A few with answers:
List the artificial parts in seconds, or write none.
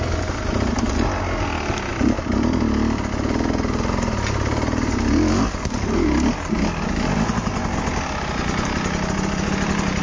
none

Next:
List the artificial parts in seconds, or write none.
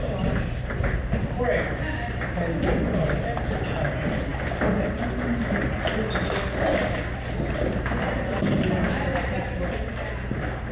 none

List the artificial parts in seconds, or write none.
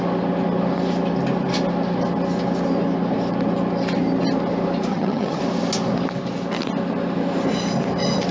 4.9-5.4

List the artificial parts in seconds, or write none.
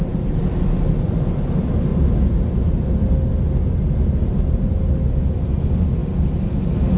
none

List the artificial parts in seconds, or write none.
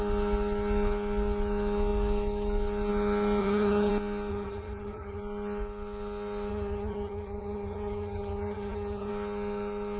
3.4-3.9; 4.3-5.2; 6.5-9.1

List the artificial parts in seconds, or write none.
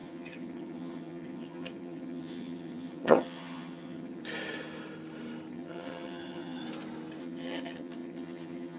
0.0-4.2; 5.5-6.6; 7.2-8.8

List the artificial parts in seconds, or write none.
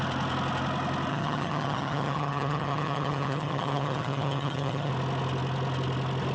1.1-4.9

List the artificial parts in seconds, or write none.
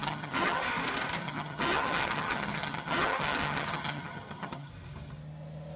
0.0-0.6; 1.2-4.7